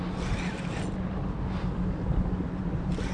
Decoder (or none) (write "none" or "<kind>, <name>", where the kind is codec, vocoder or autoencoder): none